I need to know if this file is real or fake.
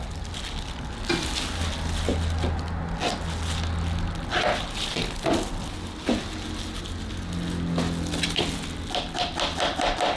real